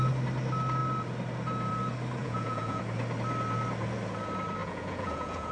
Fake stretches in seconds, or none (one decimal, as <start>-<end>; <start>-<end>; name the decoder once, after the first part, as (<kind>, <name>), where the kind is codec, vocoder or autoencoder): 2.2-2.8 (vocoder, Vocos); 4.6-5.5

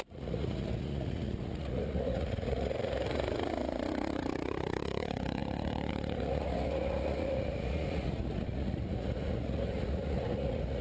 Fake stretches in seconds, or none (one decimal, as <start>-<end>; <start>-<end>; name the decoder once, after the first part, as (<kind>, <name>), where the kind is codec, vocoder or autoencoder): 0.0-10.8 (vocoder, Vocos)

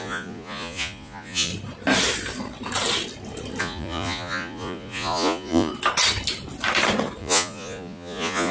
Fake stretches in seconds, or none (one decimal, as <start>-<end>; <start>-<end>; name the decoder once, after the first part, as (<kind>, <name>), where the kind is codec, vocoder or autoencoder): 0.0-1.5 (vocoder, Vocos); 3.6-5.7; 7.2-8.5

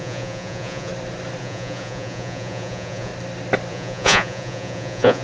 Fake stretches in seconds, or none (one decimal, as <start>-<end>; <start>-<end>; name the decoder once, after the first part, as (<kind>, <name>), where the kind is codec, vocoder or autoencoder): 0.0-0.9 (vocoder, Vocos); 1.4-3.1; 3.7-5.2

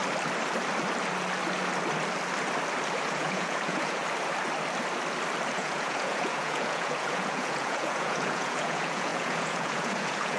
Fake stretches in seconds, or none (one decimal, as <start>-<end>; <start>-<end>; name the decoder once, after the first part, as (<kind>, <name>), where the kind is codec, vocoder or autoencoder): 3.0-4.0 (vocoder, Vocos); 5.5-10.4